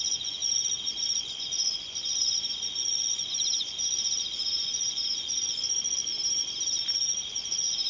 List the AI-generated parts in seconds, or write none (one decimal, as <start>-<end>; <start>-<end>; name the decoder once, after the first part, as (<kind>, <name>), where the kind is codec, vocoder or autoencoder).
0.0-6.1 (vocoder, Vocos); 7.3-7.9